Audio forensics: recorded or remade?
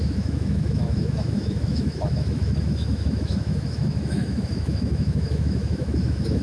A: remade